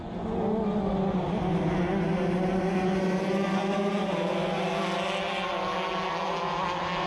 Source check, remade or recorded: recorded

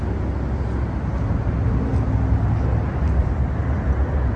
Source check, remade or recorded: recorded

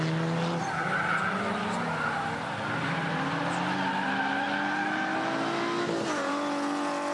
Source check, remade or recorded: recorded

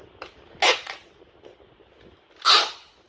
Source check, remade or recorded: recorded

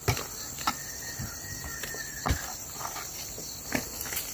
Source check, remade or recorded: recorded